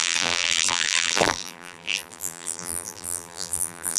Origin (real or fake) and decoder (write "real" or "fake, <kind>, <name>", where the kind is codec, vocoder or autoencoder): fake, vocoder, BigVGAN v2